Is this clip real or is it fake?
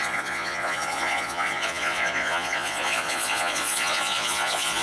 fake